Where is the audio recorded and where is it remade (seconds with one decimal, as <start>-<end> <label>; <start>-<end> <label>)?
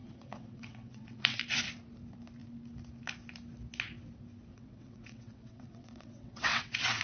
0.0-1.4 remade; 1.4-4.5 recorded; 4.5-7.0 remade